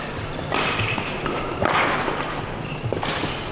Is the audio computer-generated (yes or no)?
no